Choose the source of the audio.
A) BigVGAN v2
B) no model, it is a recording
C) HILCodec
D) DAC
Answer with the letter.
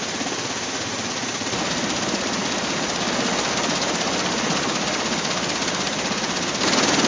B